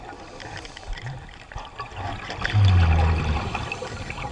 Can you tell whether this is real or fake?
real